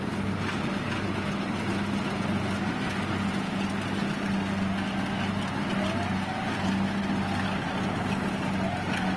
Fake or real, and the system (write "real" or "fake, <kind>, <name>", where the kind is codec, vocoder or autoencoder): real